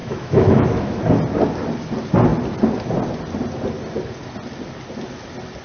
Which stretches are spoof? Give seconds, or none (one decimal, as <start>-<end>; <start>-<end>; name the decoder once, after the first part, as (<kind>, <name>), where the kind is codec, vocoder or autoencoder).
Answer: 0.0-1.0 (autoencoder, DAC-VAE)